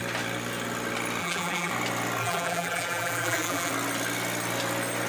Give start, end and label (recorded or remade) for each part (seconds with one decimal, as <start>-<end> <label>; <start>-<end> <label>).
0.0-1.2 recorded; 1.2-1.7 remade; 1.7-2.2 recorded; 2.2-3.7 remade; 3.7-5.1 recorded